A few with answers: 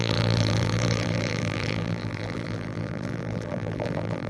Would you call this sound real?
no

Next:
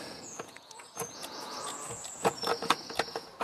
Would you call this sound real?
no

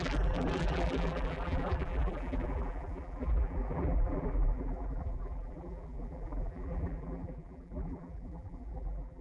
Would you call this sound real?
no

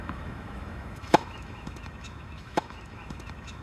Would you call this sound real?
no